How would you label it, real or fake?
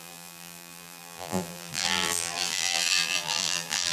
fake